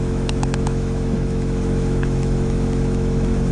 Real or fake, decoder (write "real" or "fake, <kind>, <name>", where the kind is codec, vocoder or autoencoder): fake, autoencoder, DAC-VAE